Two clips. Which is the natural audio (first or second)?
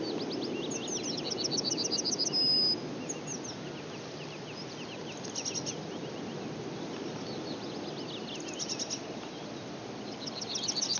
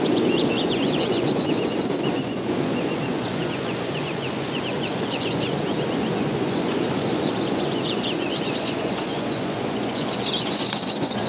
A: first